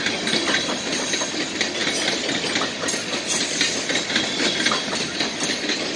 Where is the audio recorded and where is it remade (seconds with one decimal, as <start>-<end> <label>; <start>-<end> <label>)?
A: 0.0-6.0 recorded